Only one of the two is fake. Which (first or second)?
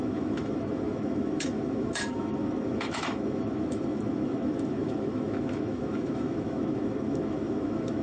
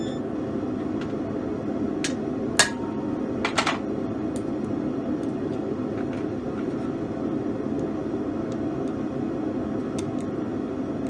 first